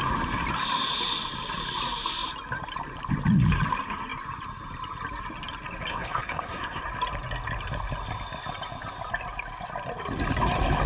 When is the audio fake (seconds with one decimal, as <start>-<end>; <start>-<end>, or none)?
5.9-6.8